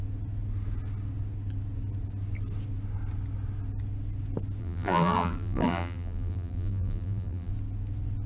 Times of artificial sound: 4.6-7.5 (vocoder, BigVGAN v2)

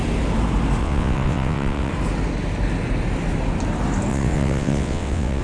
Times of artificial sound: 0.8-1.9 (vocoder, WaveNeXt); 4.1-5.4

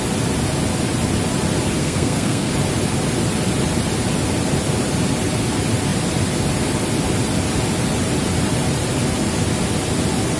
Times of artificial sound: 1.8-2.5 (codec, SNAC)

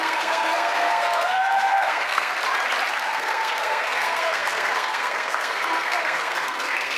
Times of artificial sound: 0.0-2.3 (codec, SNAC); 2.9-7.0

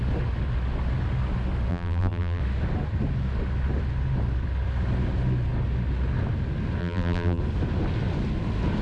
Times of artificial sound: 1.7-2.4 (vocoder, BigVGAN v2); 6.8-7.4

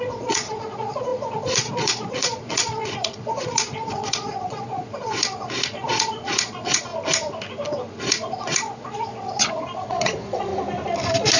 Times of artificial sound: 0.0-6.9 (vocoder, Vocos); 8.0-10.5

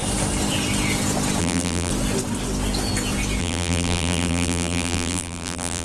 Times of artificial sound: 1.4-1.9 (vocoder, BigVGAN v2); 3.4-5.8